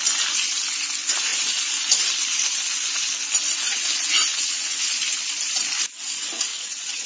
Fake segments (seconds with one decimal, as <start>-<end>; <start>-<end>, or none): 4.3-4.9; 6.5-7.1